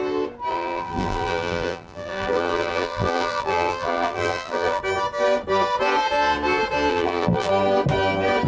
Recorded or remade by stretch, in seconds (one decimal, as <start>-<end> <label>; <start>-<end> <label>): 0.0-0.5 recorded; 0.5-4.8 remade; 4.8-6.9 recorded; 6.9-7.5 remade; 7.5-8.5 recorded